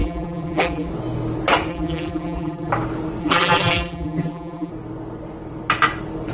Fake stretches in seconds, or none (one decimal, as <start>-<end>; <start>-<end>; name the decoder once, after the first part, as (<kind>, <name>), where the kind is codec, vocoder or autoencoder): 0.0-0.9 (vocoder, BigVGAN v2); 1.7-2.7; 3.2-4.7